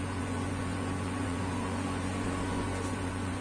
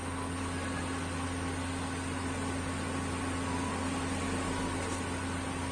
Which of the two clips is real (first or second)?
second